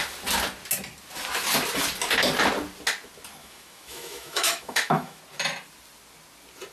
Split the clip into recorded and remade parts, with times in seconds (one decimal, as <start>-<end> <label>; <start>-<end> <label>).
0.0-3.4 recorded; 3.4-5.2 remade; 5.2-6.7 recorded